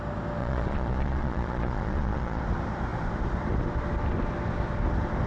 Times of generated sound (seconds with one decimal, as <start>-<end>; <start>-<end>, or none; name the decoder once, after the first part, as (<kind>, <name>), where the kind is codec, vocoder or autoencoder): 0.4-2.4 (vocoder, Vocos)